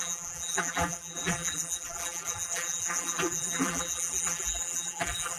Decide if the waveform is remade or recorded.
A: remade